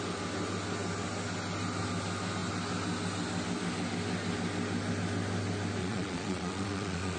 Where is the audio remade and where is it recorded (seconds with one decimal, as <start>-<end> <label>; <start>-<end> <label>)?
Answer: 0.0-5.8 recorded; 5.8-7.2 remade